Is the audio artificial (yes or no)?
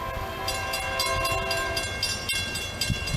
no